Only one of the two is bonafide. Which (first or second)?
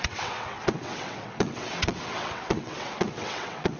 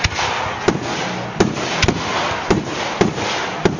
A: second